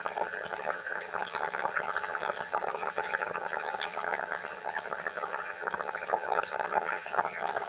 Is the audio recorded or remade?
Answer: remade